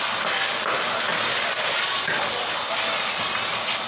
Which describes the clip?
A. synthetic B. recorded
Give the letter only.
B